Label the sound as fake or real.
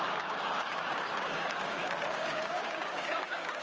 fake